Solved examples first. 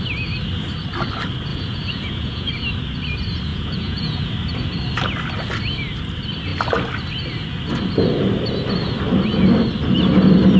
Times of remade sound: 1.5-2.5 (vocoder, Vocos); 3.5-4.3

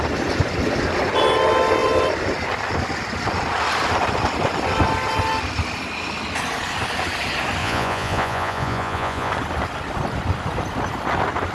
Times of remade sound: 7.6-9.3 (vocoder, Vocos)

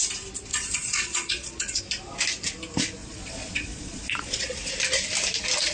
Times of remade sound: 0.5-1.8 (vocoder, Vocos); 3.0-4.7